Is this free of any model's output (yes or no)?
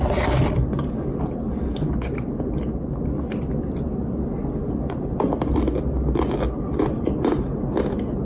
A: yes